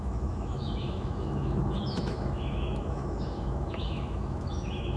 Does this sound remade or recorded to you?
remade